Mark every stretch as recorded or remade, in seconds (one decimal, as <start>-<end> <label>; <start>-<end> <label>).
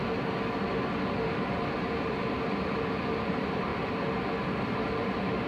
0.0-3.3 recorded; 3.3-3.7 remade; 3.7-4.6 recorded; 4.6-5.5 remade